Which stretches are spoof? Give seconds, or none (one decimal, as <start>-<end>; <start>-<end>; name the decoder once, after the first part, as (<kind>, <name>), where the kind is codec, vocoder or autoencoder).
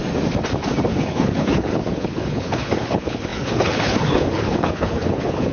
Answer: 0.9-5.5 (codec, HILCodec)